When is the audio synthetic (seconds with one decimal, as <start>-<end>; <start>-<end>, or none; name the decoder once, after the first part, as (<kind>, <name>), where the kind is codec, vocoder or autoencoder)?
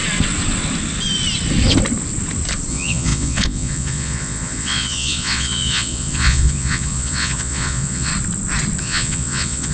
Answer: 2.7-8.1 (vocoder, Vocos); 8.8-9.7